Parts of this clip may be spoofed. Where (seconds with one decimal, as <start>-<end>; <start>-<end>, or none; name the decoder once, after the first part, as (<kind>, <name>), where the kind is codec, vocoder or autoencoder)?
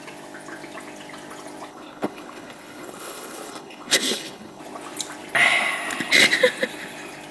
1.7-4.6 (codec, HILCodec)